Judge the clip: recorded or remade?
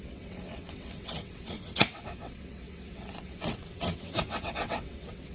remade